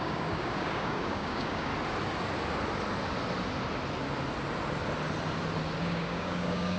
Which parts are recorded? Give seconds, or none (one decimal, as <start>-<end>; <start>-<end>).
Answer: 1.7-5.8